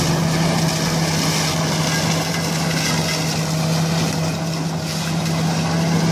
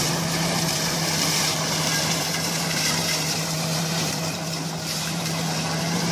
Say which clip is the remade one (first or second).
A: second